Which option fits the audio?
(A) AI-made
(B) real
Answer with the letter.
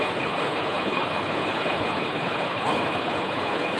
A